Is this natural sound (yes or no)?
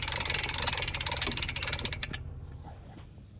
yes